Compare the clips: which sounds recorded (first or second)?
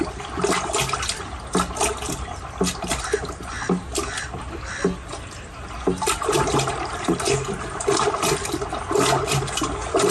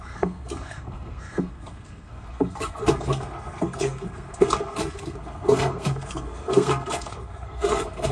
first